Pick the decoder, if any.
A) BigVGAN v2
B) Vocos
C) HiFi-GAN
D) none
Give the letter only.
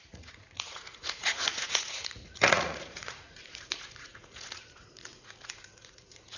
B